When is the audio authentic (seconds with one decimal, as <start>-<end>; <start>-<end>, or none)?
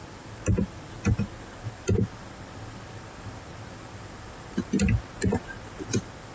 0.0-6.3